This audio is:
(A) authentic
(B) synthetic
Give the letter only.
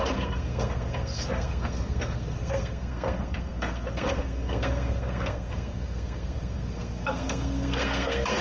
B